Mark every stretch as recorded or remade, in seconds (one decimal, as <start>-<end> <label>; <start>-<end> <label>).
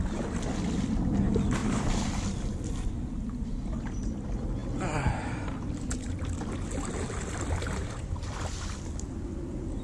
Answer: 0.0-1.6 recorded; 1.6-2.7 remade; 2.7-4.6 recorded; 4.6-8.8 remade; 8.8-9.8 recorded